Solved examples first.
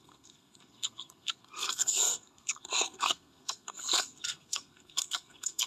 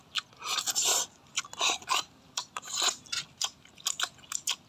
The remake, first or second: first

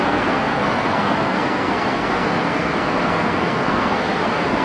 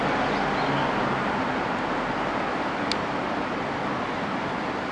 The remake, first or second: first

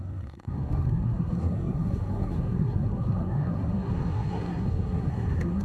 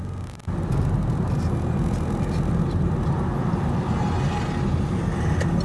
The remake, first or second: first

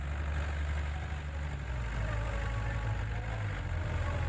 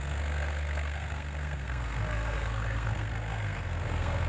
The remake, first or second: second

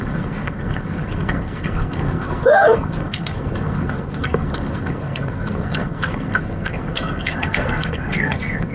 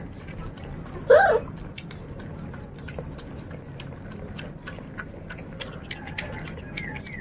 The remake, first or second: first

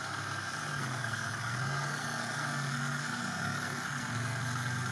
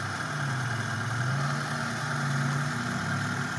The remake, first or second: first